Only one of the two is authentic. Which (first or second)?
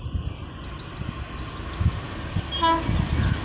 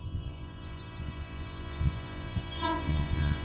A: first